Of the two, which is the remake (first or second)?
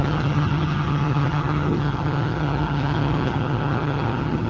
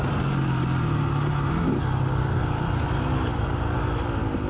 first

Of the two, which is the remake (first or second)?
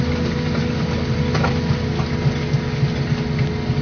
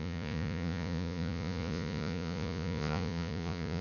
second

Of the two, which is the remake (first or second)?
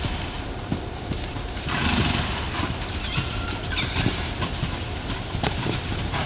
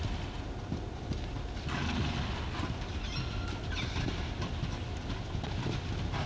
first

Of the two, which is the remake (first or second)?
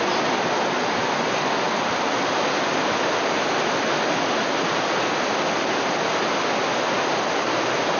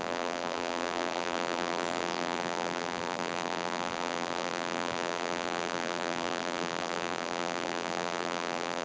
second